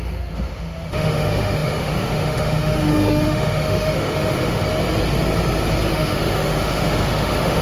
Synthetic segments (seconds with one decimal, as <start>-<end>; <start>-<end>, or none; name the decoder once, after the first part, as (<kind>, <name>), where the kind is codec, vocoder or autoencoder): 0.0-4.6 (autoencoder, DAC-VAE); 5.9-7.6